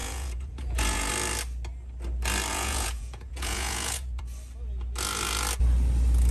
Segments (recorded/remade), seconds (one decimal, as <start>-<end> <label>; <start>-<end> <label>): 0.0-1.1 remade; 1.1-2.5 recorded; 2.5-4.2 remade; 4.2-6.3 recorded